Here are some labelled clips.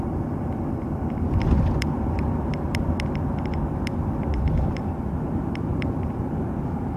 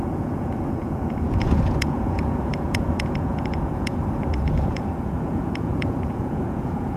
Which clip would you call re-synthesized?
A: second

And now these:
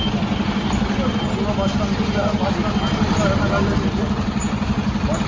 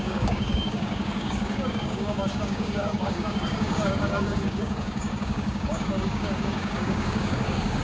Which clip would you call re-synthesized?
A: second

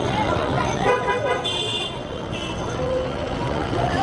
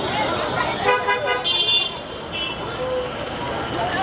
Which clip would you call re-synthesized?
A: first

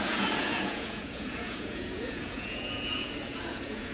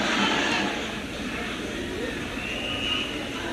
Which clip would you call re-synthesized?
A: first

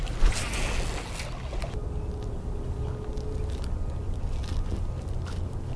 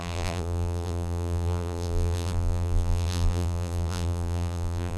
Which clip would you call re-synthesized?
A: second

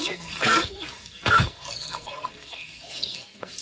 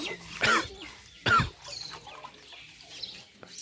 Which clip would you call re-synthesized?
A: first